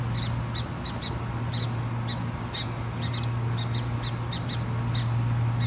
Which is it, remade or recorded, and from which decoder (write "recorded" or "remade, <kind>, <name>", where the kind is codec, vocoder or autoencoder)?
recorded